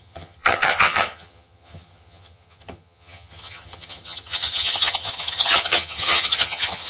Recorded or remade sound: remade